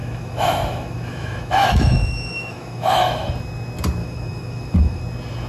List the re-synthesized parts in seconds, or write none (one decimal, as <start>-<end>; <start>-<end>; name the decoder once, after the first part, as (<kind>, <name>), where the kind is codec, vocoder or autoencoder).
0.0-3.3 (autoencoder, DAC-VAE); 4.0-5.0